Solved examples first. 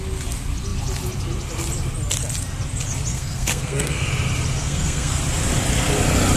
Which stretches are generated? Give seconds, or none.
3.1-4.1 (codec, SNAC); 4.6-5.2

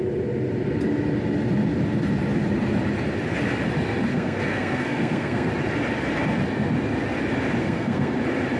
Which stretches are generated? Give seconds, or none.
4.1-5.5 (codec, SNAC); 7.6-8.2